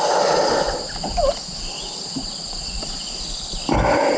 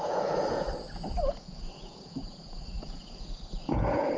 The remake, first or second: second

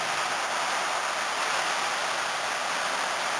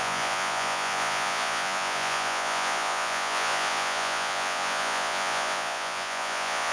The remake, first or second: second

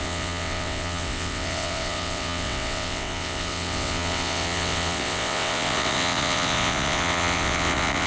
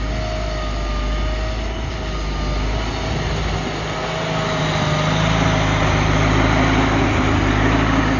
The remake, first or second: first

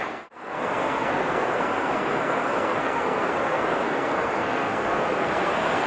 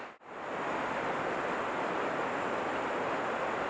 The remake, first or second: first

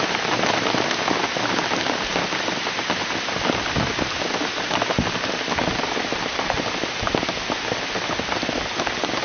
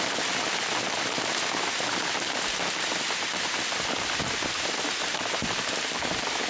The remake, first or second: second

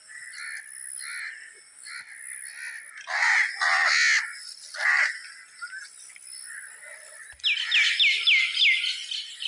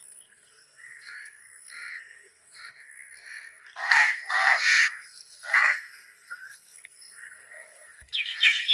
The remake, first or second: second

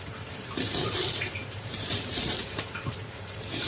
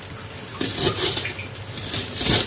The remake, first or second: first